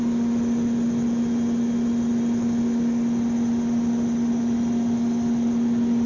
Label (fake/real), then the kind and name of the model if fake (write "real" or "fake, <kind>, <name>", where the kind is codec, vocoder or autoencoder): real